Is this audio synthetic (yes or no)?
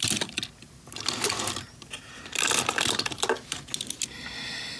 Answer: no